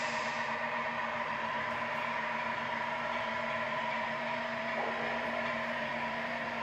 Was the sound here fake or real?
fake